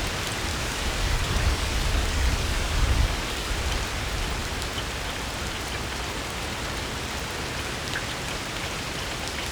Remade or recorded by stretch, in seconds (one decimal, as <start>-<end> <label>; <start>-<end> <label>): 0.0-0.5 recorded; 0.5-3.5 remade; 3.5-9.5 recorded